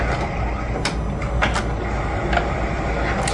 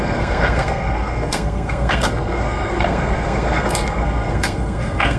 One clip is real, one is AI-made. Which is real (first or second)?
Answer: first